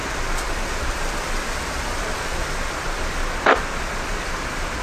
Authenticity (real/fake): fake